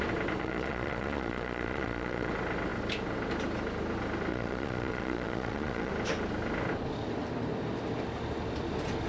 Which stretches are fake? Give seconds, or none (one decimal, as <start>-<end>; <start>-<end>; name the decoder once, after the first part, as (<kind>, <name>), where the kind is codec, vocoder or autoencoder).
0.4-2.3 (vocoder, Vocos); 4.3-5.9